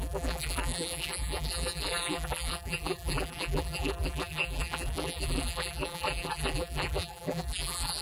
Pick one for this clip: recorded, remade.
remade